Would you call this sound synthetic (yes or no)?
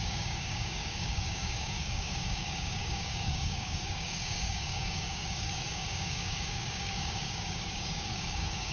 yes